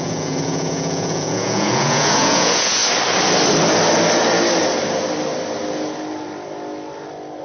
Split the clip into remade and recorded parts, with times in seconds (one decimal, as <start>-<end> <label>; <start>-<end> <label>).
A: 0.0-2.8 remade; 2.8-7.4 recorded